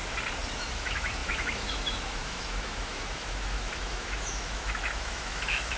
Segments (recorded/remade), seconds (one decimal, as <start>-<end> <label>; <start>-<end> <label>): 0.0-0.5 recorded; 0.5-5.8 remade